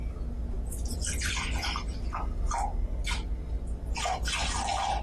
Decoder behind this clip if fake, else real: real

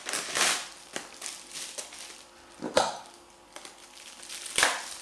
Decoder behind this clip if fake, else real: real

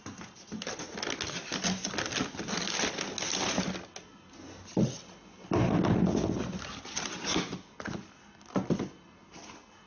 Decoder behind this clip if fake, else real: real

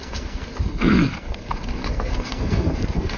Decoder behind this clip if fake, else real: fake, codec, SNAC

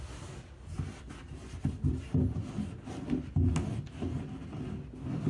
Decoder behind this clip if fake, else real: real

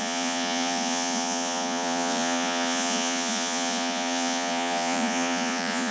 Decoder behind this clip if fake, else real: fake, vocoder, Vocos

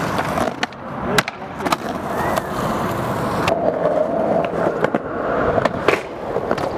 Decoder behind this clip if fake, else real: real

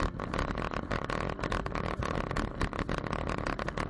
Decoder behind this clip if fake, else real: real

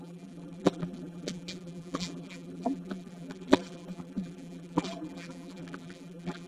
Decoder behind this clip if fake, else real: fake, vocoder, BigVGAN v2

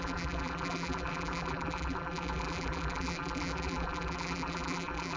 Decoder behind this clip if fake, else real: fake, vocoder, BigVGAN v2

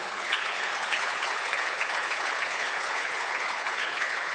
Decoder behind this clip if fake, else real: fake, codec, HILCodec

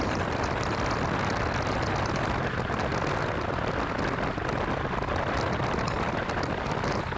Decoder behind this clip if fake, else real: real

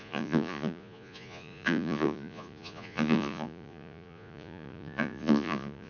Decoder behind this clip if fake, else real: fake, vocoder, Vocos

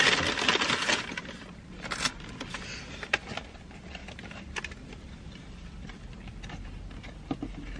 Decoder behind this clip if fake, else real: real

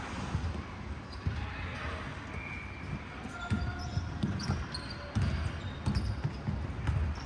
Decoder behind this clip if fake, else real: real